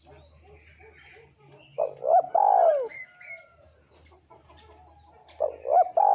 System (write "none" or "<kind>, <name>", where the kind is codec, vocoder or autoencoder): none